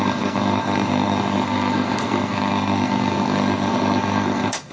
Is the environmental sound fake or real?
fake